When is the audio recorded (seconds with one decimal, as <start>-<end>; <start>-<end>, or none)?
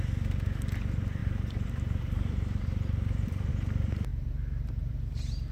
0.0-1.2; 3.5-4.1